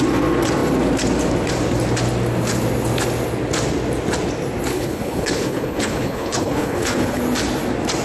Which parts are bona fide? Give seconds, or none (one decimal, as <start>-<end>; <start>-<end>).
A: 0.0-4.7; 7.2-8.0